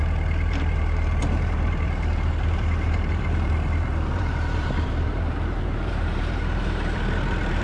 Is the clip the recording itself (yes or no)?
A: no